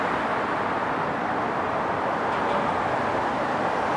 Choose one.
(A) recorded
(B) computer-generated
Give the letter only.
A